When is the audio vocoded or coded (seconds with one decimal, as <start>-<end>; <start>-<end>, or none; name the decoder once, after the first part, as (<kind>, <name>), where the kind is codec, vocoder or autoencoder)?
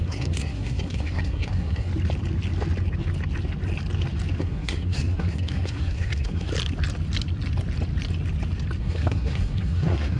0.0-1.9 (codec, SNAC); 4.4-6.5; 8.8-10.2